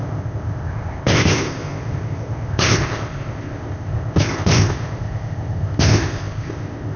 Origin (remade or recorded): remade